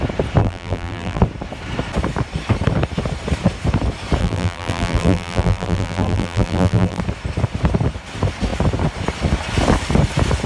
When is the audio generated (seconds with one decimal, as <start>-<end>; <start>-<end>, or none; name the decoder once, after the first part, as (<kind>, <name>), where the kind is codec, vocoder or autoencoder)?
0.4-1.2 (vocoder, BigVGAN v2); 4.2-7.0